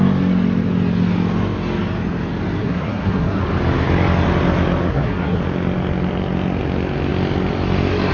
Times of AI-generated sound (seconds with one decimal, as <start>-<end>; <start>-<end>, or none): 2.6-3.4; 4.9-5.4